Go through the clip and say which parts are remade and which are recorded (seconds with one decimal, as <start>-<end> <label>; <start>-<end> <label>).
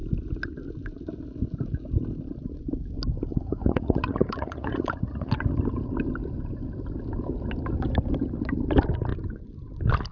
0.0-3.3 recorded; 3.3-5.3 remade; 5.3-10.1 recorded